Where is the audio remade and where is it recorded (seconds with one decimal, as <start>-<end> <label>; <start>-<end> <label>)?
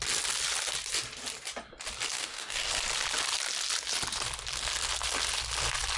0.0-2.1 recorded; 2.1-2.7 remade; 2.7-6.0 recorded